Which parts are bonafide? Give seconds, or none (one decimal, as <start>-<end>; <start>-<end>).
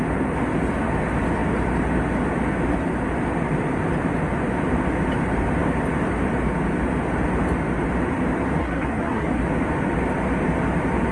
0.0-8.6; 9.4-11.1